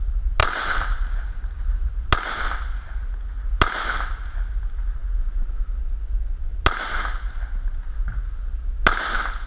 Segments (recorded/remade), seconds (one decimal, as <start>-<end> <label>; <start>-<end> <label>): 0.0-0.4 recorded; 0.4-1.9 remade; 1.9-9.5 recorded